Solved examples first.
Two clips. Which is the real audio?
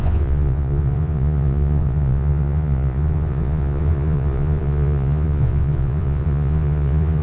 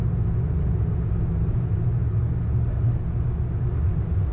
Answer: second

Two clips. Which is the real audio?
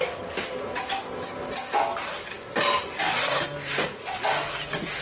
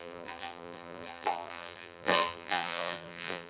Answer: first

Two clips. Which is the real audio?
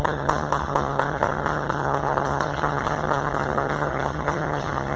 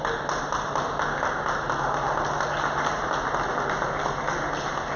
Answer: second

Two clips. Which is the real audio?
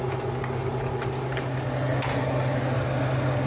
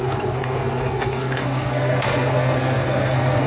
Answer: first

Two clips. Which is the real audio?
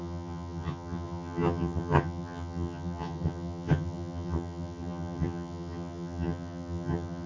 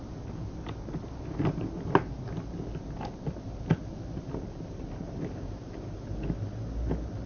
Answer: second